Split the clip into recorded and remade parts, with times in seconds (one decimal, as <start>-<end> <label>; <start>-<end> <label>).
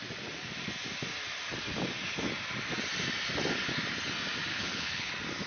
0.0-4.5 recorded; 4.5-5.1 remade; 5.1-5.5 recorded